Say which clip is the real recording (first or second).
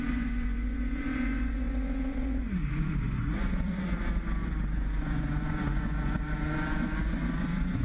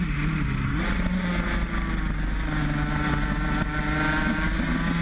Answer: second